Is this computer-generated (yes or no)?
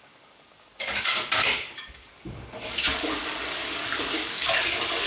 yes